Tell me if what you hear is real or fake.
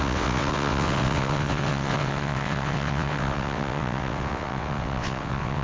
fake